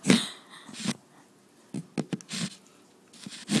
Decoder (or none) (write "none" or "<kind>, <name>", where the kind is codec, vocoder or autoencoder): none